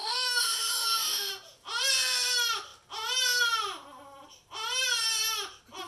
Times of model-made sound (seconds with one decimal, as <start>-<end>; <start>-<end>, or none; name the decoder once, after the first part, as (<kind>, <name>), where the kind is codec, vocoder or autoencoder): 0.0-1.3 (autoencoder, DAC-VAE)